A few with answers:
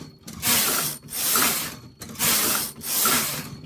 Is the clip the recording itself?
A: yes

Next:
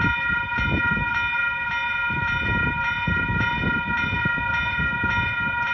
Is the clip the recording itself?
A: yes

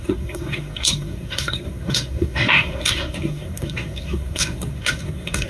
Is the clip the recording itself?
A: no